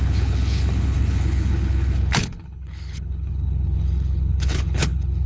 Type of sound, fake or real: fake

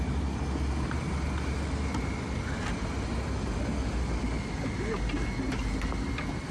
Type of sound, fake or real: real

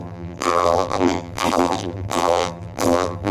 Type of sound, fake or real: fake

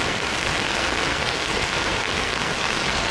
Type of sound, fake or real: fake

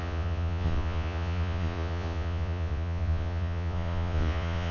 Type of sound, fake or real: fake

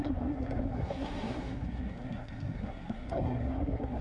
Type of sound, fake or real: fake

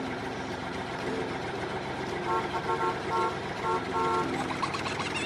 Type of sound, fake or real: fake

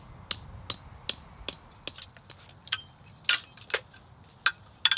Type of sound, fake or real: real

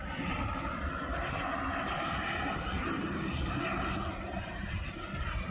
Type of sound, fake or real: real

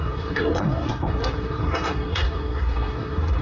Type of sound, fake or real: fake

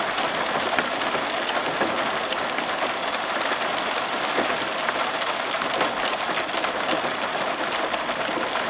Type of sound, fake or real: real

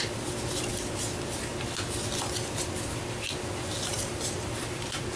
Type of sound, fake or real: real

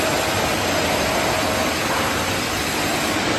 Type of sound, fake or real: real